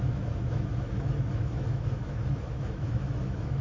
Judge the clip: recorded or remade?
remade